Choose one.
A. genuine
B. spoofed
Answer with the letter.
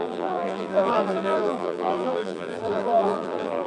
B